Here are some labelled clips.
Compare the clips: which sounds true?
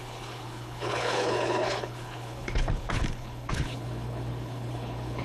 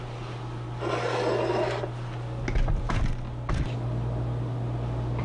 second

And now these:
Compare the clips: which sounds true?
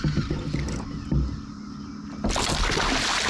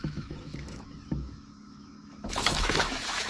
first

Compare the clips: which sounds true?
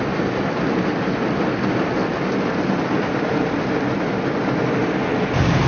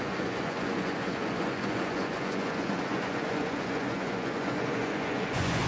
first